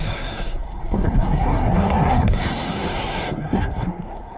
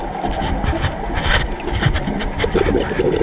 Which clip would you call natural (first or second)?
second